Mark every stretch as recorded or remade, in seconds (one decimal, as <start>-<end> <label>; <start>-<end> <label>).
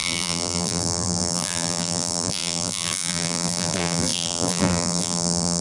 0.0-5.6 remade